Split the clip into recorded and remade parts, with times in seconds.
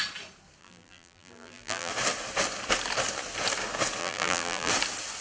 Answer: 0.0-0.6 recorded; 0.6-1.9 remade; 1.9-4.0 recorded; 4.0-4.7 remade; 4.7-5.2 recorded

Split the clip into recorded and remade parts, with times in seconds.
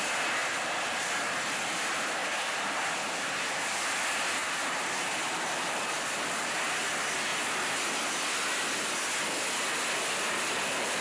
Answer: 0.0-0.4 recorded; 0.4-1.1 remade; 1.1-2.2 recorded; 2.2-2.8 remade; 2.8-4.4 recorded; 4.4-6.6 remade; 6.6-11.0 recorded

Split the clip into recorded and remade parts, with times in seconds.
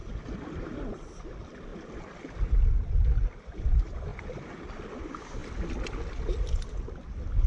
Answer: 0.0-7.5 recorded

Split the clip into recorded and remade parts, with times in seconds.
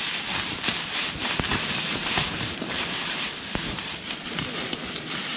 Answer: 0.0-1.9 recorded; 1.9-3.9 remade; 3.9-5.4 recorded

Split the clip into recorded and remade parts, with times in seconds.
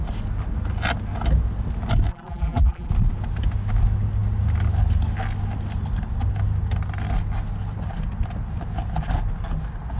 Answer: 0.0-2.1 recorded; 2.1-2.9 remade; 2.9-10.0 recorded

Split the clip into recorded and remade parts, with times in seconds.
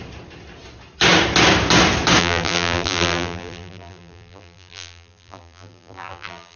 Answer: 0.0-2.2 recorded; 2.2-6.6 remade